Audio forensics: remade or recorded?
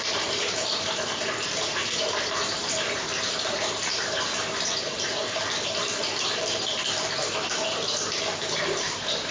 remade